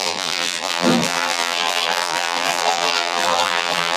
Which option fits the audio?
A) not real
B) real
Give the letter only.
A